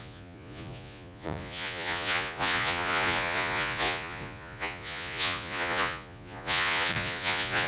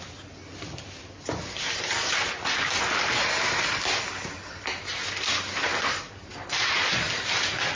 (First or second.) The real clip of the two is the second